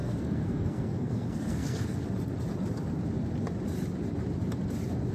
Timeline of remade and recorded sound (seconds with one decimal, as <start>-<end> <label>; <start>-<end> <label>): 0.0-2.0 remade; 2.0-5.1 recorded